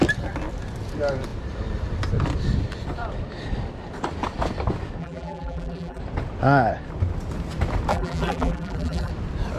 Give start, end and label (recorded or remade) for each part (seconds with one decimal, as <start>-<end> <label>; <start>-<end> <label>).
0.0-5.0 recorded; 5.0-6.0 remade; 6.0-7.9 recorded; 7.9-9.1 remade; 9.1-9.6 recorded